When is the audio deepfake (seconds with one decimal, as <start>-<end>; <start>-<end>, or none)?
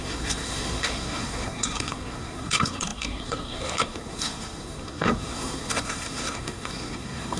0.0-7.4